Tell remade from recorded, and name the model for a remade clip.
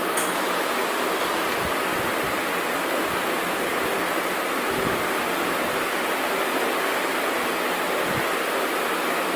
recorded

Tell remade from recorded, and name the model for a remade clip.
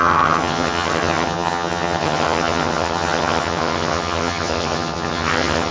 remade, vocoder, HiFi-GAN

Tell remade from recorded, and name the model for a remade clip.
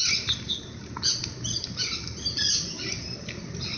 recorded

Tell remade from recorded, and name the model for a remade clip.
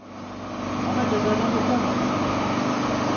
recorded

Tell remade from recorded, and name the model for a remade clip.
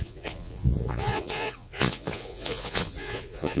remade, vocoder, Vocos